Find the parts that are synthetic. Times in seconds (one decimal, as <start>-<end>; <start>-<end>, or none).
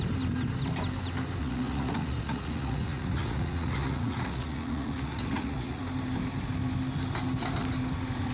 1.4-5.8